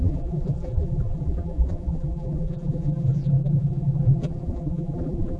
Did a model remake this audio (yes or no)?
yes